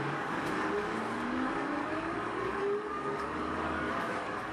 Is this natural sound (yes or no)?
no